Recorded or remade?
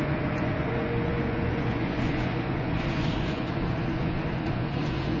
remade